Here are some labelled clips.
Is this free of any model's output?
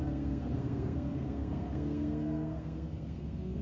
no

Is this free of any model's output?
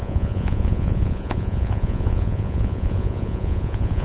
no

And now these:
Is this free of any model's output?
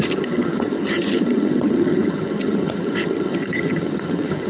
no